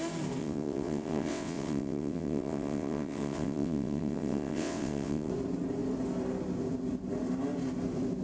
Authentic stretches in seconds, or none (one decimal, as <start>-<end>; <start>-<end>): 0.0-0.4; 5.3-8.2